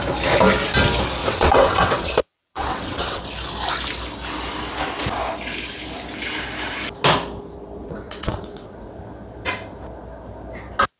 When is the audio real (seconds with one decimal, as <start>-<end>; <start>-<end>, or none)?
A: 0.0-1.2; 3.2-7.8; 9.0-11.0